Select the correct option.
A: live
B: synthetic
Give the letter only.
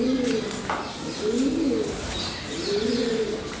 A